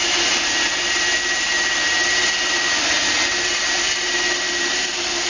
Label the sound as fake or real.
real